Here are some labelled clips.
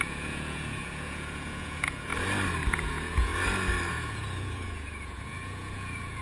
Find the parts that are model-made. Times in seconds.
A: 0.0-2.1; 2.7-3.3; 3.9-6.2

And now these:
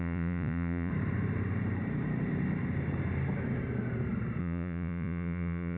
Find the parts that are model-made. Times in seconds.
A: 0.0-0.9; 4.4-5.8

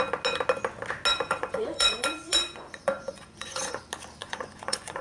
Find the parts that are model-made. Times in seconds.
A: 1.1-3.8; 4.2-5.0

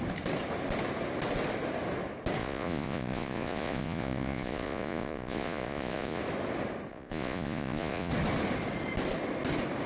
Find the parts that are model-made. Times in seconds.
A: 2.4-6.2; 6.9-8.1

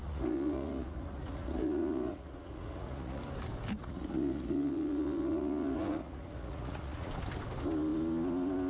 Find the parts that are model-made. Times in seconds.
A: 0.0-3.2; 3.8-7.1

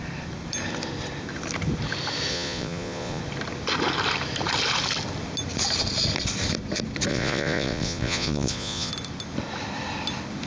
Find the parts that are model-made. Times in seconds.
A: 2.3-3.2; 7.1-8.9

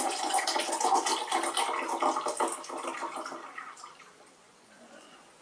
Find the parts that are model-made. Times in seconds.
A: 0.0-1.1; 4.3-5.4

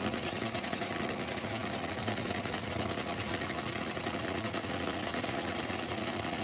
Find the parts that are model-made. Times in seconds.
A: 0.0-6.4